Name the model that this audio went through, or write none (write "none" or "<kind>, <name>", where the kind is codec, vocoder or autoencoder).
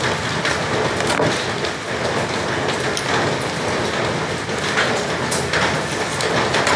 none